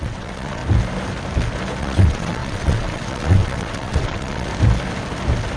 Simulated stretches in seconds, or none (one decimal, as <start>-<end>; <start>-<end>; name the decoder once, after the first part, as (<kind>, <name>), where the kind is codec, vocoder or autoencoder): 0.0-0.6 (vocoder, WaveNeXt); 1.8-4.5